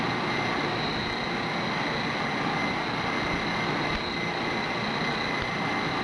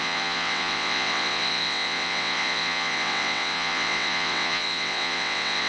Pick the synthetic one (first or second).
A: second